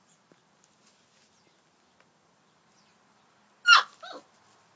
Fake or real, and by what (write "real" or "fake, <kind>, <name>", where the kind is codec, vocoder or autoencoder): real